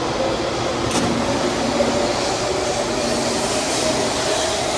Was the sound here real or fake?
real